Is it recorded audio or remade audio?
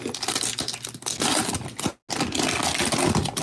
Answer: recorded